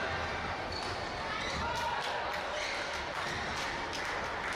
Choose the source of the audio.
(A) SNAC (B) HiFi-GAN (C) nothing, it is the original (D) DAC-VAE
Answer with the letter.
C